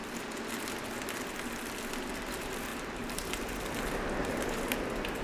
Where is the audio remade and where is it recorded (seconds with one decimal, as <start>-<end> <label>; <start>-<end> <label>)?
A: 0.0-0.6 remade; 0.6-2.7 recorded; 2.7-3.3 remade; 3.3-4.2 recorded; 4.2-4.8 remade; 4.8-5.2 recorded